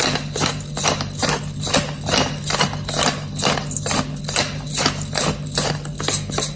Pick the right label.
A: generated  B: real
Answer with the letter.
B